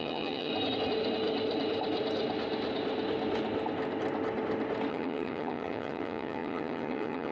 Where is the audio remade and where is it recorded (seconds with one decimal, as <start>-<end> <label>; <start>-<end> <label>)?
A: 0.0-0.5 remade; 0.5-4.9 recorded; 4.9-7.3 remade